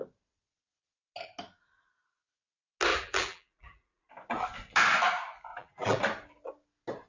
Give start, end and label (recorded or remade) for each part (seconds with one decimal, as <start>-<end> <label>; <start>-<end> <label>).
0.0-2.9 recorded; 2.9-4.1 remade; 4.1-5.5 recorded; 5.5-6.0 remade; 6.0-7.1 recorded